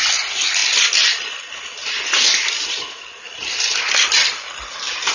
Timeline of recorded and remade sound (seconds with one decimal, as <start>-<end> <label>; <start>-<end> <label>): 0.0-5.1 recorded